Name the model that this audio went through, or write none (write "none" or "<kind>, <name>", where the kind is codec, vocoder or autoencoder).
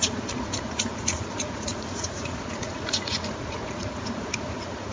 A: vocoder, Vocos